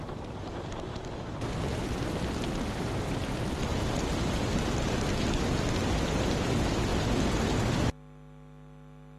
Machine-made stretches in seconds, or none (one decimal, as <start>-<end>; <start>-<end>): none